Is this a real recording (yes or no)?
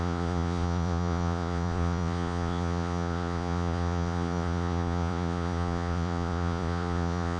no